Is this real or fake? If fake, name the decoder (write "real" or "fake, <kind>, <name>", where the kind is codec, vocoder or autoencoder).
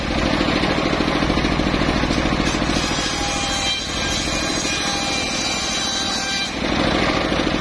real